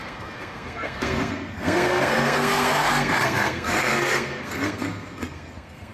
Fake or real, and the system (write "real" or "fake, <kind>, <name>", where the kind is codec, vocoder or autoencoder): fake, codec, SNAC